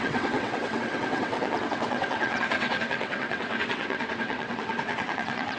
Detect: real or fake fake